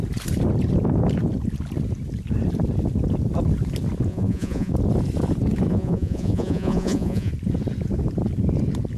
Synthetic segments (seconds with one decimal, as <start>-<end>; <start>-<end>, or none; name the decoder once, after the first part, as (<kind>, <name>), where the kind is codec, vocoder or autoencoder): 4.1-4.7 (vocoder, Vocos); 5.7-7.3